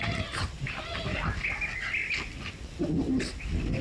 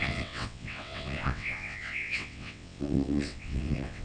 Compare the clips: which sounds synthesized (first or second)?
second